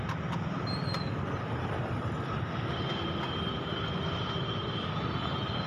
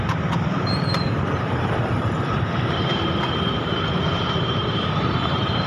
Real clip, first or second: first